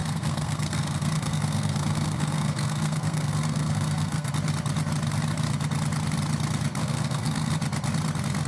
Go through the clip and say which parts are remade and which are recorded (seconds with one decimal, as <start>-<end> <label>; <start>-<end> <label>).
0.0-4.3 remade; 4.3-6.8 recorded; 6.8-7.5 remade; 7.5-8.5 recorded